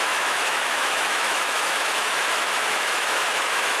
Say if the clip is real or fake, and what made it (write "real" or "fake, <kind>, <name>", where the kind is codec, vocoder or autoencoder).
fake, autoencoder, DAC-VAE